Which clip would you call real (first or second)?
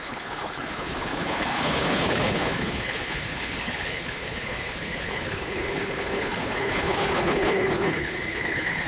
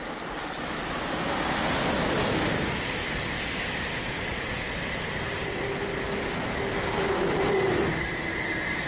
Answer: second